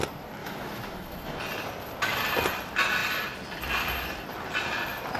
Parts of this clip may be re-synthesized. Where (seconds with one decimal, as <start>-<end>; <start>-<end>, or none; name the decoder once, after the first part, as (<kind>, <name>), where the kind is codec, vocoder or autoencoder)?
0.4-1.4 (autoencoder, DAC-VAE)